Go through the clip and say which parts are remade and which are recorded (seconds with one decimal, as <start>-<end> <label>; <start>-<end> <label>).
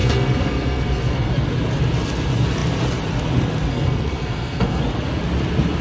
0.0-1.3 remade; 1.3-3.7 recorded; 3.7-4.8 remade; 4.8-5.8 recorded